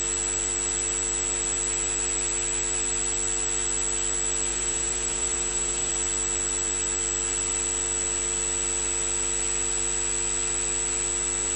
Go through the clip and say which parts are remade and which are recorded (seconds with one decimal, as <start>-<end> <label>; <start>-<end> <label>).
0.0-4.5 recorded; 4.5-5.9 remade; 5.9-11.6 recorded